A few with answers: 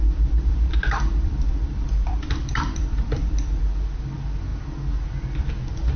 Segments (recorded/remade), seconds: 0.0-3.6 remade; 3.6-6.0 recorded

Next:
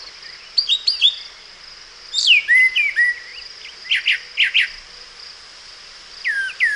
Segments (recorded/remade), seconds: 0.0-6.8 recorded

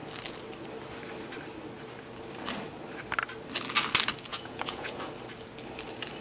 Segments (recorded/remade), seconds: 0.0-4.3 recorded; 4.3-5.0 remade; 5.0-6.2 recorded

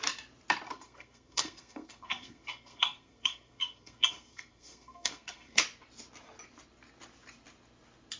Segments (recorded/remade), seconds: 0.0-0.7 recorded; 0.7-5.6 remade; 5.6-8.2 recorded

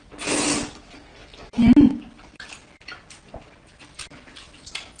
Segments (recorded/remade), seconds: 0.0-5.0 recorded